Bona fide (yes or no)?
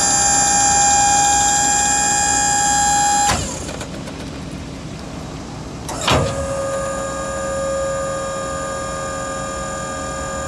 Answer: yes